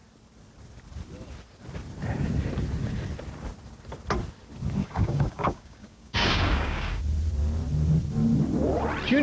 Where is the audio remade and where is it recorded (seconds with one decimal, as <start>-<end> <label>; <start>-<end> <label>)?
0.0-4.8 recorded; 4.8-7.0 remade; 7.0-9.2 recorded